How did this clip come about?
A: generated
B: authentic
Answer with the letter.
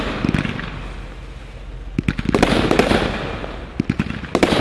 B